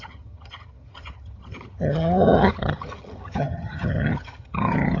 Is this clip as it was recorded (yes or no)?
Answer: no